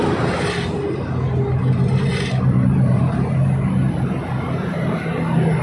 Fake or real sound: real